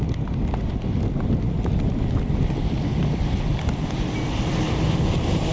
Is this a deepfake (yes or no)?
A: no